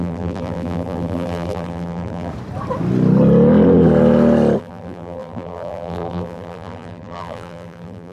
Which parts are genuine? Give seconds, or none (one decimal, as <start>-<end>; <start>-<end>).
2.3-4.6